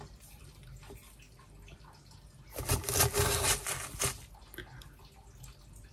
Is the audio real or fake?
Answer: real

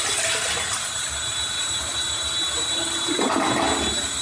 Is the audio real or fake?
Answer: real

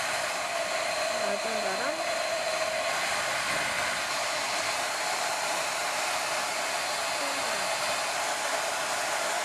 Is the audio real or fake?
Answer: real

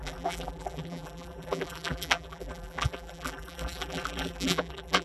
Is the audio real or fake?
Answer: fake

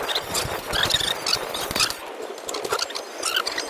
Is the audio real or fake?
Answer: real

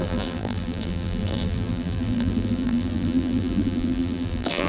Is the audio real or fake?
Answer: fake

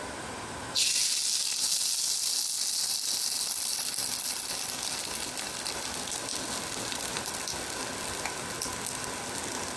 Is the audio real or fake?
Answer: real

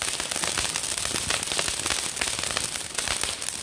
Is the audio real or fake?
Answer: real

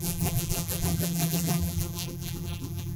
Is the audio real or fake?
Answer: fake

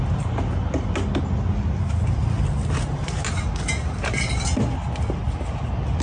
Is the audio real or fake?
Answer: real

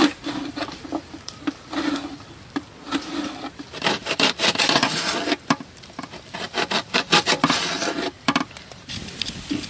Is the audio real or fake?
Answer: fake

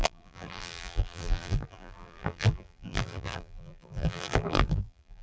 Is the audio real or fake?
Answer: fake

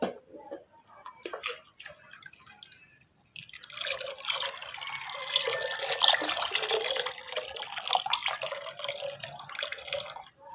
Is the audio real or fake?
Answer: real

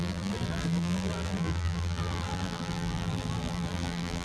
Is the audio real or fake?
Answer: fake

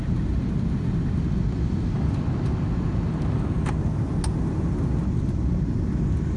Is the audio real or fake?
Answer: real